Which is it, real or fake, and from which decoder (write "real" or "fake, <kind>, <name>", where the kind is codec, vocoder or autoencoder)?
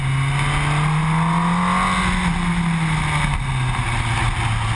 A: real